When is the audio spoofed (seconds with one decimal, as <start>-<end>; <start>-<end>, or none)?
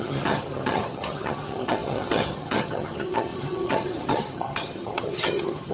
0.0-5.7